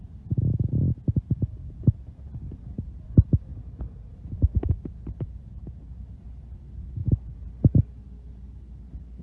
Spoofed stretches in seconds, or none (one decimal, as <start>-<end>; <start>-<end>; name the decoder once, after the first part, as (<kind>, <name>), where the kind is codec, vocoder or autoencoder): 3.5-4.1 (vocoder, Vocos); 5.5-6.0; 7.0-7.5